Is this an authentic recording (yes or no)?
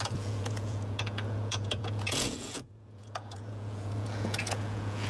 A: no